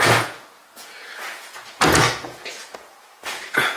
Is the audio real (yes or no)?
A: no